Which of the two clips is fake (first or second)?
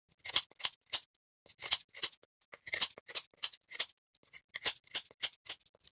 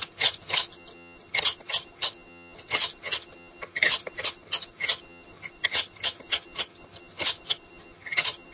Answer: second